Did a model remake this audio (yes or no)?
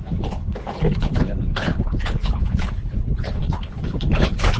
yes